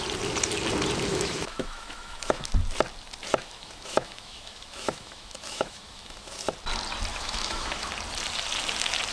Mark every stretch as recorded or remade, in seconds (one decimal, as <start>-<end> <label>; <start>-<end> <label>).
0.0-1.1 recorded; 1.1-2.5 remade; 2.5-3.4 recorded; 3.4-6.4 remade; 6.4-7.1 recorded; 7.1-7.9 remade; 7.9-9.1 recorded

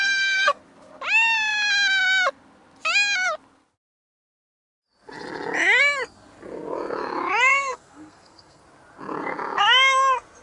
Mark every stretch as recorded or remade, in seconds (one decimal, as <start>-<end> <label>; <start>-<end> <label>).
0.0-0.6 remade; 0.6-7.5 recorded; 7.5-8.6 remade; 8.6-10.4 recorded

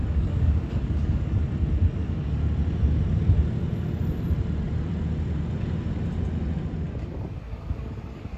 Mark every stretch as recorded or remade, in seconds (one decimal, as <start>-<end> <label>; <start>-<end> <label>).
0.0-1.4 remade; 1.4-2.0 recorded; 2.0-2.4 remade; 2.4-7.0 recorded; 7.0-8.4 remade